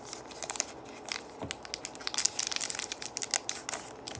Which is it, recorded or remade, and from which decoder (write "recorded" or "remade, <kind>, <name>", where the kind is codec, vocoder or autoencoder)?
recorded